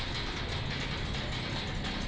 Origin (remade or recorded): recorded